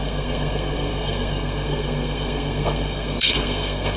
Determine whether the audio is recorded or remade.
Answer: remade